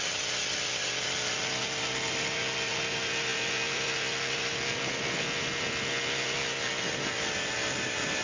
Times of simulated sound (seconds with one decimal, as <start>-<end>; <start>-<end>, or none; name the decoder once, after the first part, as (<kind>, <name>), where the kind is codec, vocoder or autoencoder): none